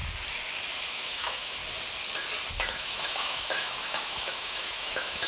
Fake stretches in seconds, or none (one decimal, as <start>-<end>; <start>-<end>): 0.9-1.6; 2.6-5.3